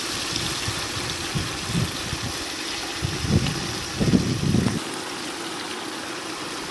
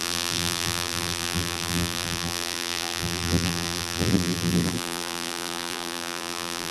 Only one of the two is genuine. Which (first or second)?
first